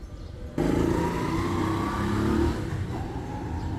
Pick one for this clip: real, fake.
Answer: real